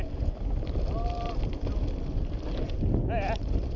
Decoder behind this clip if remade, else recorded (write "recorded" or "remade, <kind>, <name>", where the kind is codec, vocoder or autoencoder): recorded